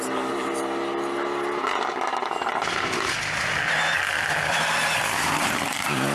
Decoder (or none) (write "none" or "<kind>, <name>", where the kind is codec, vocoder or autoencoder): none